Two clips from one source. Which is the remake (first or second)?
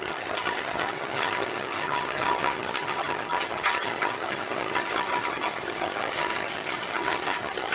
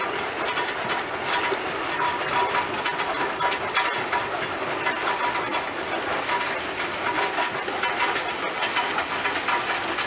first